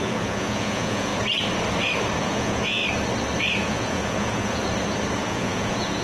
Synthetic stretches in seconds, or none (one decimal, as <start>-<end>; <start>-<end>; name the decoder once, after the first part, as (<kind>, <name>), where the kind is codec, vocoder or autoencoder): 0.0-1.1 (vocoder, Vocos); 2.2-2.8; 3.5-4.6; 5.2-6.0